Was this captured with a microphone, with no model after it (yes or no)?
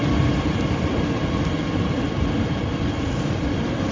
no